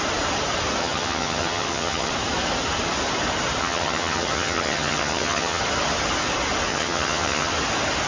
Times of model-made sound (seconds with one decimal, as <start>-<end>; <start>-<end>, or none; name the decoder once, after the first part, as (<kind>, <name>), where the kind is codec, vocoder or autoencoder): 0.8-2.1 (vocoder, HiFi-GAN); 3.6-5.6; 6.7-7.5